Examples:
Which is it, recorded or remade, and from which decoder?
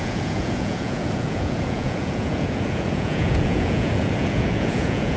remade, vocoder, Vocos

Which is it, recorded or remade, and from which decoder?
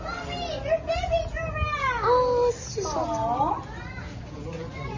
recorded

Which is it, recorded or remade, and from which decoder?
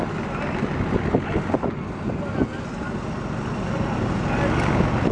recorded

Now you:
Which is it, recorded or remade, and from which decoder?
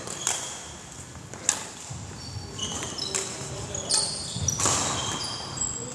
recorded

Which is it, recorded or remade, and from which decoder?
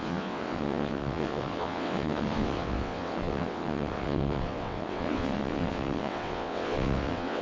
remade, vocoder, WaveNeXt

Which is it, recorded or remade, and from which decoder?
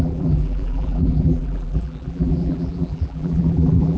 remade, vocoder, BigVGAN v2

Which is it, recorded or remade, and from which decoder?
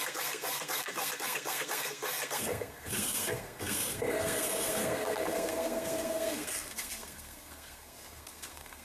remade, codec, SNAC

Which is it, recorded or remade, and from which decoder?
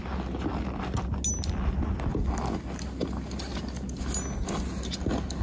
recorded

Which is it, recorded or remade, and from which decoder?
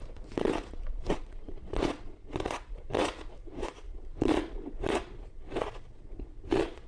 remade, vocoder, Vocos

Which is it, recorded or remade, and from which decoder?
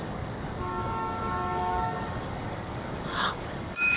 remade, codec, DAC